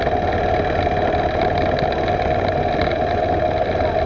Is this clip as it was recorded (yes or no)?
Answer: yes